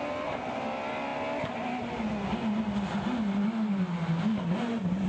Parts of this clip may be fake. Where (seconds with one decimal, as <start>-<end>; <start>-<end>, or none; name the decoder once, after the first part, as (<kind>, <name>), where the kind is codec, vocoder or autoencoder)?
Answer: none